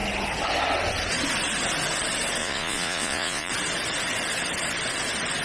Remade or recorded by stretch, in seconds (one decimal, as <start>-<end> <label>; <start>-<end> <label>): 0.0-2.4 recorded; 2.4-3.5 remade; 3.5-5.4 recorded